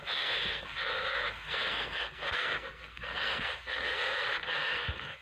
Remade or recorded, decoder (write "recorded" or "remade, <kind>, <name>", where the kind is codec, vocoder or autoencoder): remade, codec, SNAC